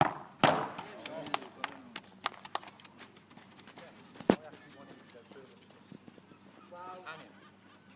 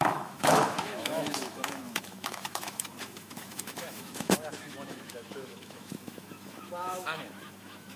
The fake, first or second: second